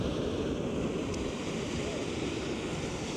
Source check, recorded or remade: recorded